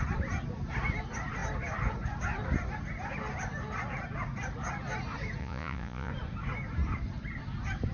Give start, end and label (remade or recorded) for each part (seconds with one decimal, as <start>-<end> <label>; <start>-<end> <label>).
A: 0.0-5.4 recorded; 5.4-6.1 remade; 6.1-7.9 recorded